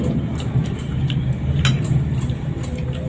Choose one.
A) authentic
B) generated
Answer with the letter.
A